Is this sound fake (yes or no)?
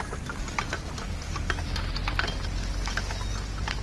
no